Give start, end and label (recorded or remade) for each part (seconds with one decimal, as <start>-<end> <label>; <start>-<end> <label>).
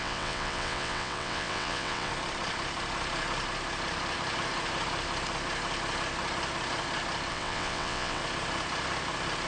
0.0-2.1 remade; 2.1-7.3 recorded; 7.3-8.2 remade; 8.2-9.5 recorded